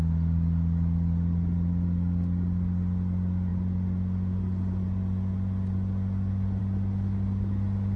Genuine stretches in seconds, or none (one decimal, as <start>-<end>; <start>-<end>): 0.0-8.0